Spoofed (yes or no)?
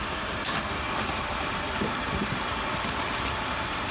yes